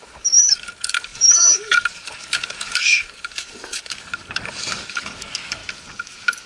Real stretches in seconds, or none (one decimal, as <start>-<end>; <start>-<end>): 5.6-6.5